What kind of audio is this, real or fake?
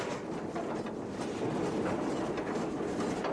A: real